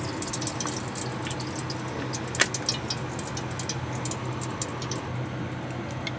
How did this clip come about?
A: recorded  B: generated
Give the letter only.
A